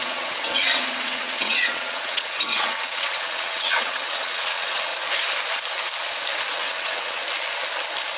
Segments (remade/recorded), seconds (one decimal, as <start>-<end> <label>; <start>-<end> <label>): 0.0-4.9 remade; 4.9-6.5 recorded; 6.5-7.2 remade; 7.2-8.2 recorded